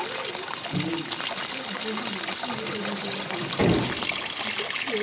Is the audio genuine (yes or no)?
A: yes